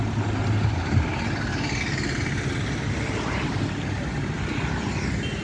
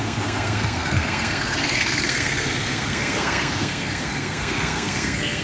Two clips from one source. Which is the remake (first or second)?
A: second